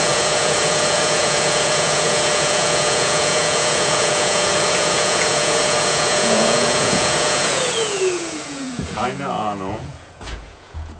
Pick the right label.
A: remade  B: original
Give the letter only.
A